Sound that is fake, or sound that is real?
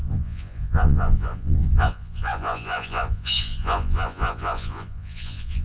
fake